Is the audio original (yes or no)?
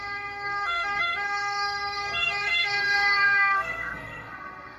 no